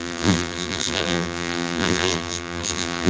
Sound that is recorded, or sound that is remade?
remade